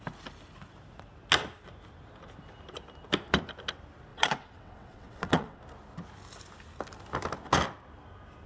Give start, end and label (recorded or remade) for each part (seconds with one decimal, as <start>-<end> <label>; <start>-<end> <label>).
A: 0.0-4.1 recorded; 4.1-5.6 remade; 5.6-8.5 recorded